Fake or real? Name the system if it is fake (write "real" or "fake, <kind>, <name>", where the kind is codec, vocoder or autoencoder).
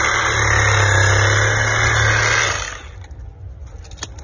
real